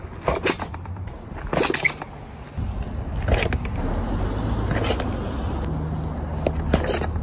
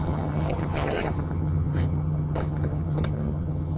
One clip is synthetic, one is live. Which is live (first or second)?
first